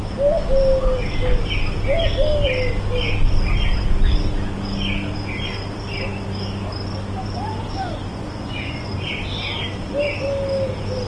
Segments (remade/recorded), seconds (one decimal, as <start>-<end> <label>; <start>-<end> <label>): 0.0-8.1 recorded; 8.1-8.9 remade; 8.9-11.1 recorded